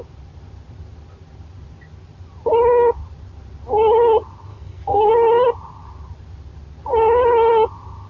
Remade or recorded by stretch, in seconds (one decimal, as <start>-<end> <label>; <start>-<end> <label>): 0.0-4.5 recorded; 4.5-5.1 remade; 5.1-8.1 recorded